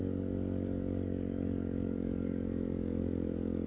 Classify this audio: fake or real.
fake